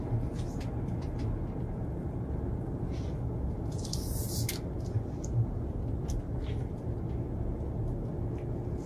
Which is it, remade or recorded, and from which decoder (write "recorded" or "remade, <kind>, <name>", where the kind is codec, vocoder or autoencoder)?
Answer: recorded